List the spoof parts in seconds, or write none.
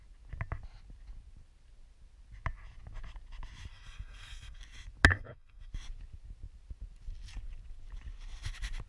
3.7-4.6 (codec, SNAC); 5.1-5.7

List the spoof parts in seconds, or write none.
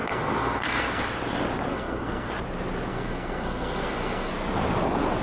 0.0-1.0 (codec, SNAC); 1.7-2.3; 2.9-4.3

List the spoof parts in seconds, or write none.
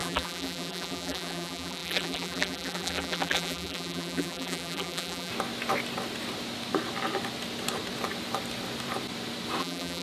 0.0-5.3 (vocoder, BigVGAN v2); 9.6-10.0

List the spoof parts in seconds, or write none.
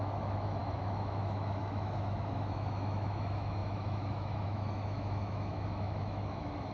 0.0-6.7 (autoencoder, DAC-VAE)